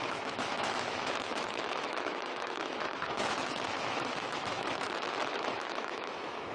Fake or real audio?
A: fake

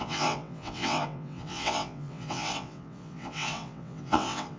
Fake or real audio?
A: fake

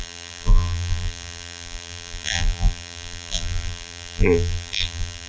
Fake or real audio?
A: fake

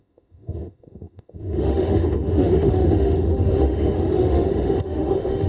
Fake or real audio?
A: fake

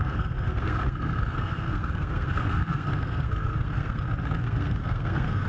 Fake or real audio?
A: fake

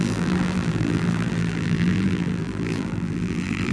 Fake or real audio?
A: fake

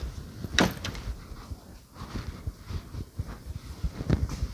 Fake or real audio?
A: real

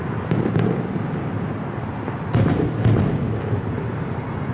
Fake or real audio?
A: real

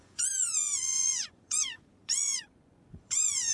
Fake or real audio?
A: fake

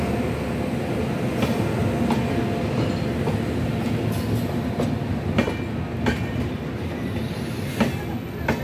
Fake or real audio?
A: real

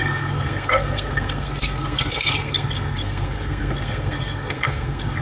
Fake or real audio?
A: fake